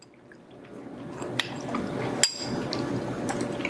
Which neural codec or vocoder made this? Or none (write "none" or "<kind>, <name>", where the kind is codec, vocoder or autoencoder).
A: none